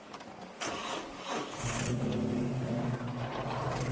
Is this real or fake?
fake